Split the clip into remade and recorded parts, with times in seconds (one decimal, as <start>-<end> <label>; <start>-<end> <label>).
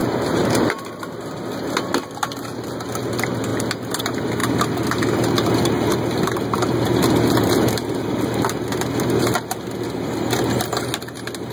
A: 0.0-11.5 recorded